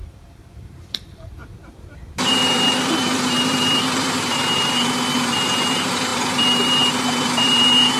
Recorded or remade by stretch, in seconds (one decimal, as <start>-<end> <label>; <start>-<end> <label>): 0.0-8.0 remade